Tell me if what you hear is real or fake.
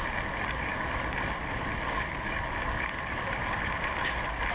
real